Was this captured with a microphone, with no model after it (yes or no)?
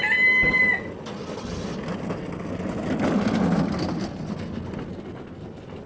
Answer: yes